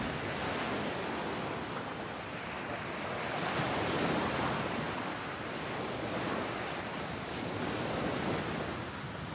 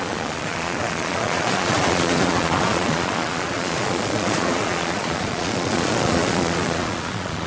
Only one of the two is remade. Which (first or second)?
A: second